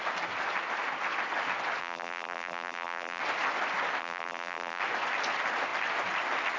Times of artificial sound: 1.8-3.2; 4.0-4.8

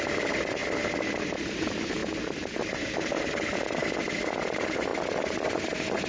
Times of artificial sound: 0.0-0.6; 1.1-3.8; 4.4-6.1

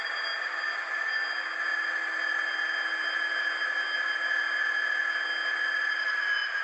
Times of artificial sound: none

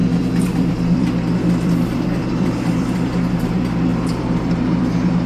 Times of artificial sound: 0.0-3.2; 3.9-5.3

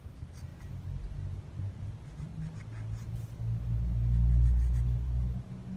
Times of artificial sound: 0.0-2.3

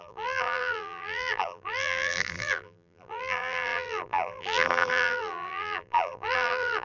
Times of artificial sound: 0.0-6.8

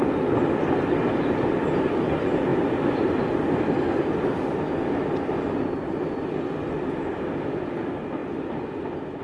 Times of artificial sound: none

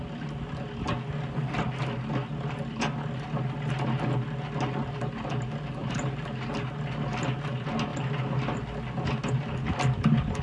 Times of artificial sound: 5.8-6.5